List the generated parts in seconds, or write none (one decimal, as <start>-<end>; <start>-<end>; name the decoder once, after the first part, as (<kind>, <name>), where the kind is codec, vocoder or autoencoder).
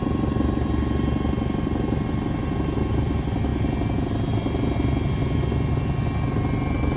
none